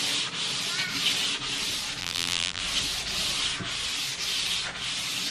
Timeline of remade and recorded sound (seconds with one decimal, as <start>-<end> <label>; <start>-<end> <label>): 0.0-2.0 recorded; 2.0-2.6 remade; 2.6-5.3 recorded